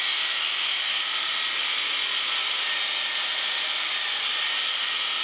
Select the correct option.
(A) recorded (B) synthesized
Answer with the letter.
A